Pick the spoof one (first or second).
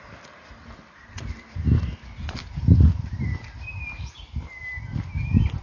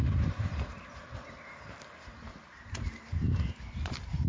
second